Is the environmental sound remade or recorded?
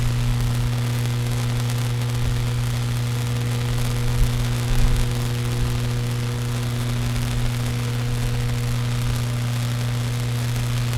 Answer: recorded